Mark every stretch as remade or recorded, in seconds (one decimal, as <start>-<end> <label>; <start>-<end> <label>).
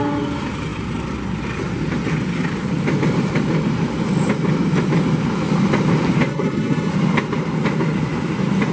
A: 0.0-6.3 recorded; 6.3-6.9 remade; 6.9-8.7 recorded